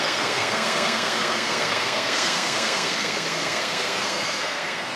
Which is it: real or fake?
fake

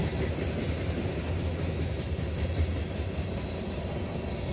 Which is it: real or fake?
real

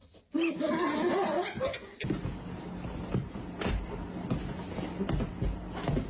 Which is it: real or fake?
real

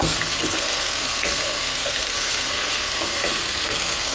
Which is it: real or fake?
fake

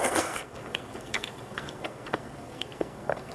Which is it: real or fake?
fake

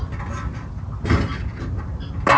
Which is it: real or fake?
real